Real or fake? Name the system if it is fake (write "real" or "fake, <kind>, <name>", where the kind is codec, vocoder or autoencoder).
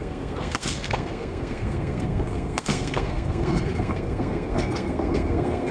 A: fake, codec, SNAC